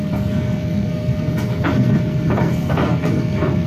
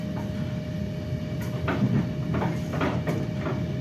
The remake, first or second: first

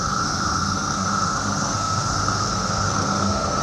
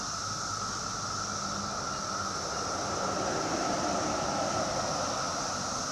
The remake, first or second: first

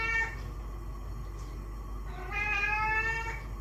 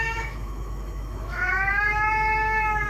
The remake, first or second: second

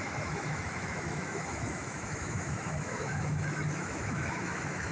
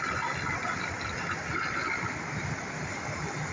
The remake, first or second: first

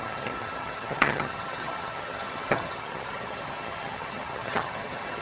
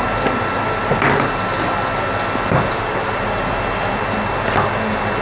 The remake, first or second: first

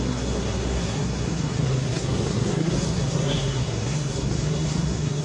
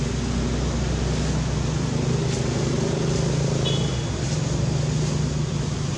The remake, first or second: first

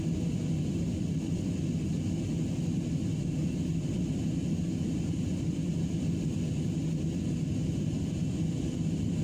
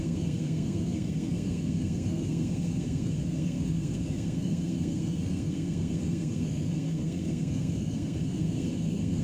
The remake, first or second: second